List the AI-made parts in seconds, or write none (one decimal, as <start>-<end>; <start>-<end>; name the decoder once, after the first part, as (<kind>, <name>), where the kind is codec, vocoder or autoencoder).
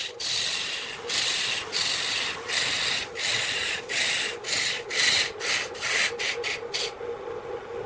none